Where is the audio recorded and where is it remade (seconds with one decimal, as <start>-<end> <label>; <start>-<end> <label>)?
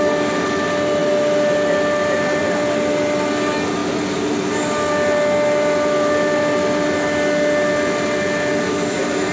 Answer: 0.0-9.3 recorded